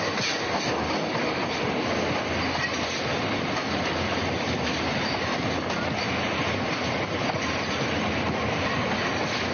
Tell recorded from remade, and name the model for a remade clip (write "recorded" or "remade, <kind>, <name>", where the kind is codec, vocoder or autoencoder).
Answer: recorded